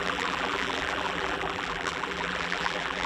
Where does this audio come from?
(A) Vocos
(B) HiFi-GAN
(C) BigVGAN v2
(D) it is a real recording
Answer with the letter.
C